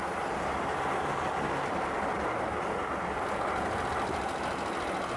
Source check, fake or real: real